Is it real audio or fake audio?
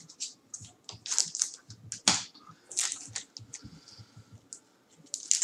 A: real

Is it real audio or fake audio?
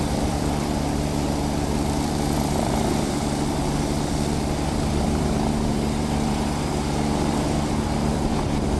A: fake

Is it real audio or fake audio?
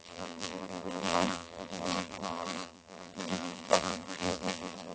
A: fake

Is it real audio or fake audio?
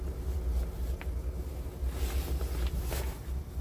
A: real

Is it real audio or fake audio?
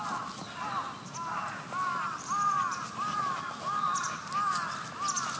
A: real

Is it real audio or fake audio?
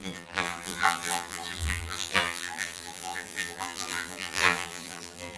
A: fake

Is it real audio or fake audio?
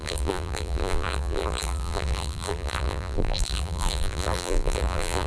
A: fake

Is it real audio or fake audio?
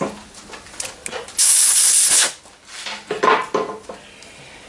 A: real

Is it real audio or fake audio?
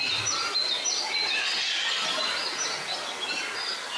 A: real